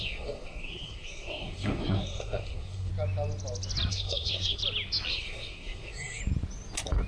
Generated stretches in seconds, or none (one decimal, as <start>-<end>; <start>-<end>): 0.0-2.9; 3.9-4.6; 5.1-6.2